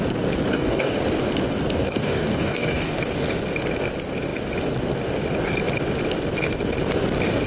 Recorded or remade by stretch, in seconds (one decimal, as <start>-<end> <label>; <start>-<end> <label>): 0.0-0.5 recorded; 0.5-1.0 remade; 1.0-1.8 recorded; 1.8-3.0 remade; 3.0-7.5 recorded